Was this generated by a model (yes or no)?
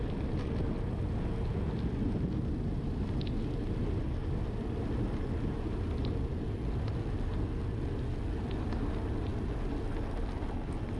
no